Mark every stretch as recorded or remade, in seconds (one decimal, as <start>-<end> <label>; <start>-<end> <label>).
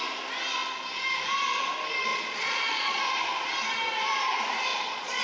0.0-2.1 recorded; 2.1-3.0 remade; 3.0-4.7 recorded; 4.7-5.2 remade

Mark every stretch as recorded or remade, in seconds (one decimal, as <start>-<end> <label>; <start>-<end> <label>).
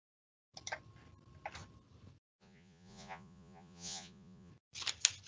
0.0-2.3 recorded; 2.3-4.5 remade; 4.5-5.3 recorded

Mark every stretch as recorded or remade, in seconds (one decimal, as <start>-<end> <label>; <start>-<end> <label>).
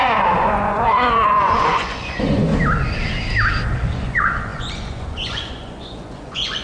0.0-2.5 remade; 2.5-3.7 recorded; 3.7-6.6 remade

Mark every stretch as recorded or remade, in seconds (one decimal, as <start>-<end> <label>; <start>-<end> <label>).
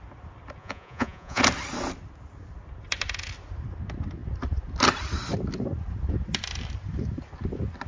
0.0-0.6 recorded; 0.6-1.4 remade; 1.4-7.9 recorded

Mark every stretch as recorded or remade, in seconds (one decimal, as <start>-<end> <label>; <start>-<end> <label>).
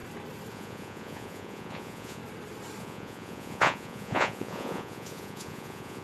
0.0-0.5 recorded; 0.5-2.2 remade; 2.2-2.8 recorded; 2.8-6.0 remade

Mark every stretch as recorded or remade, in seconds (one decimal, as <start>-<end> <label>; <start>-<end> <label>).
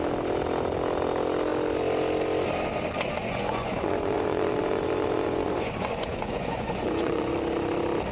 0.0-3.2 recorded; 3.2-7.3 remade; 7.3-8.1 recorded